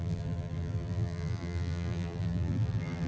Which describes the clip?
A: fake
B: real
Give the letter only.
A